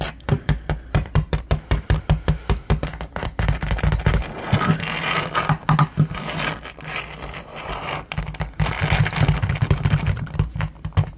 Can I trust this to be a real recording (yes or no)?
yes